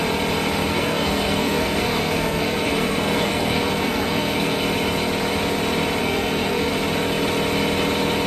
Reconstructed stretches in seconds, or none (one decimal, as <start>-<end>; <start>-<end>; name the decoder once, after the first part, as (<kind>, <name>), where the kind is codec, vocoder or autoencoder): 0.7-4.6 (codec, SNAC); 6.0-6.7